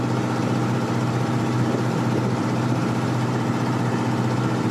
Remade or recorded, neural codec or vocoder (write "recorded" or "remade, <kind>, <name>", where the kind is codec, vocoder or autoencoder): recorded